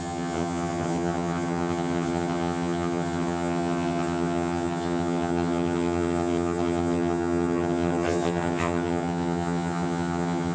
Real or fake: fake